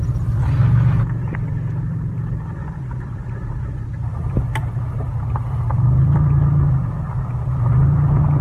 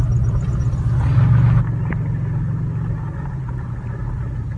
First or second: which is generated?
first